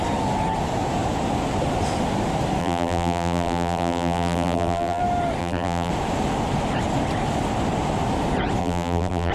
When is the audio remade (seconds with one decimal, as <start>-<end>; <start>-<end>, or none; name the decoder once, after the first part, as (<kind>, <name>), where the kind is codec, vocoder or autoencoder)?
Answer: 2.6-5.0 (vocoder, BigVGAN v2); 5.4-5.9; 8.6-9.3